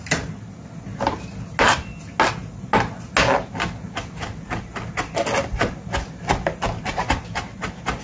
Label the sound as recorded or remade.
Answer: recorded